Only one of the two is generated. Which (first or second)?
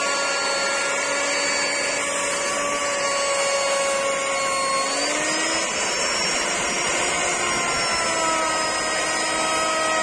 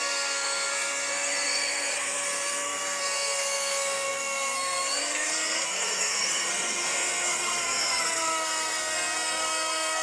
second